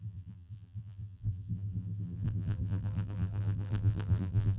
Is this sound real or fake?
fake